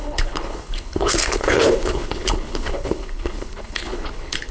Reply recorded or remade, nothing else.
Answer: remade